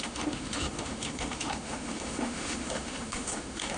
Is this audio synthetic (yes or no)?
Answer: yes